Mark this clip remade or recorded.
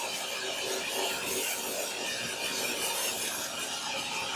recorded